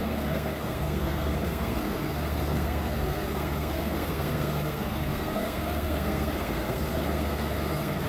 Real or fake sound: fake